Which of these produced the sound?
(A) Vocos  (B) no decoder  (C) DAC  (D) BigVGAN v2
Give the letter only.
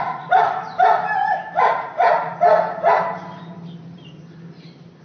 B